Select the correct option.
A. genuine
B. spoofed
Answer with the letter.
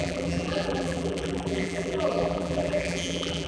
B